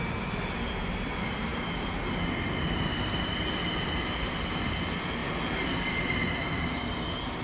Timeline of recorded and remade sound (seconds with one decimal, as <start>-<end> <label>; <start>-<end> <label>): 0.0-7.4 recorded